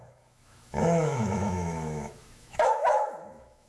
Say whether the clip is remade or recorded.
remade